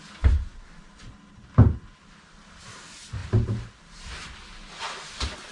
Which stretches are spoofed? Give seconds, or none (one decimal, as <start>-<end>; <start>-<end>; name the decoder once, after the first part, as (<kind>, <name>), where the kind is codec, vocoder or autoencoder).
none